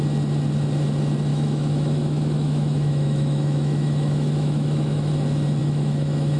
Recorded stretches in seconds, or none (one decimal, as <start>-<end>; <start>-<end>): 0.0-1.3; 5.1-5.6